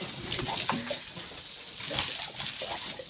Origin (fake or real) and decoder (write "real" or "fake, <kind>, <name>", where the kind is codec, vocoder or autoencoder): real